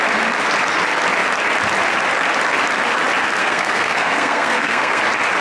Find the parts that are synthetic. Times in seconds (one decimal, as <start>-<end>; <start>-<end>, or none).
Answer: 3.4-5.0